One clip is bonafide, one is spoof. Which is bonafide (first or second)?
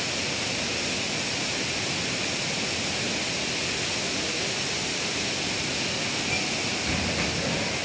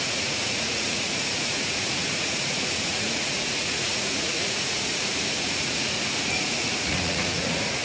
first